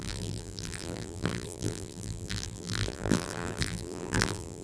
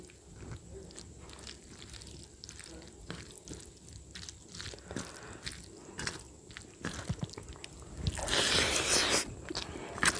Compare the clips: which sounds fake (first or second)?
first